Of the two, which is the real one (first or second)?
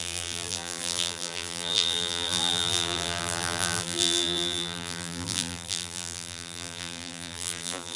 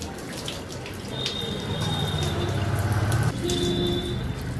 second